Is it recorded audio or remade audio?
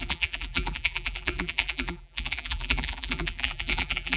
remade